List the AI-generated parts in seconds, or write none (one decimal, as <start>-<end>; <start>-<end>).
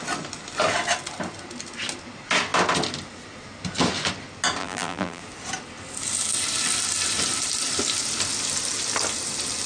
4.6-5.2